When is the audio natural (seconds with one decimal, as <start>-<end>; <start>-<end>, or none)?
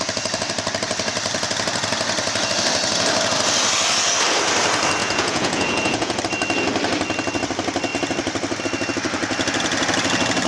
0.0-5.0; 6.2-10.5